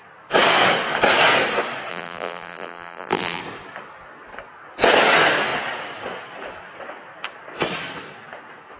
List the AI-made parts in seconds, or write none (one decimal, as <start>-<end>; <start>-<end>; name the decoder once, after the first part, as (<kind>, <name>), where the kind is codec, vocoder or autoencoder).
1.9-3.4 (vocoder, BigVGAN v2)